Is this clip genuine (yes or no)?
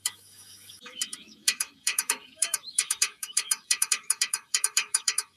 no